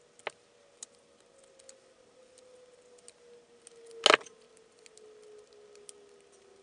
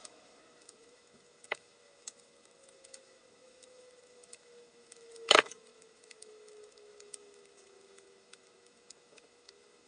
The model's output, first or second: second